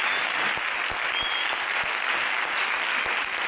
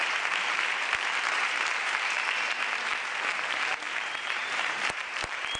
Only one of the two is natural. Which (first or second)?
first